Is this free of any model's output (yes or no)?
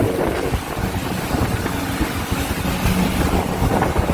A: yes